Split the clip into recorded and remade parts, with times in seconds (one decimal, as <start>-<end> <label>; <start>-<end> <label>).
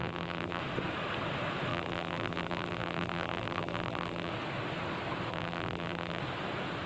0.0-0.6 remade; 0.6-1.7 recorded; 1.7-4.3 remade; 4.3-5.3 recorded; 5.3-6.2 remade; 6.2-6.9 recorded